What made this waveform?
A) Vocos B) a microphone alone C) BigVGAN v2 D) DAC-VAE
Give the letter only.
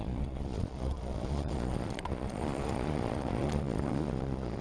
A